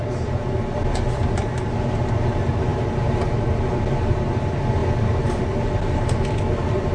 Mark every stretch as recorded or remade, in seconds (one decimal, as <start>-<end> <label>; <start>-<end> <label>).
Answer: 0.0-6.9 recorded